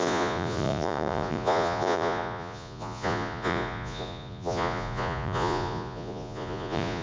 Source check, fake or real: fake